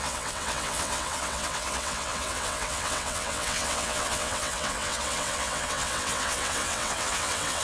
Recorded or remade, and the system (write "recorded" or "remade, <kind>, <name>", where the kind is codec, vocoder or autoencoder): remade, vocoder, WaveNeXt